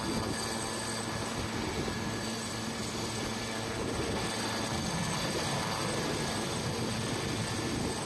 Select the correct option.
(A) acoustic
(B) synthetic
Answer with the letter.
A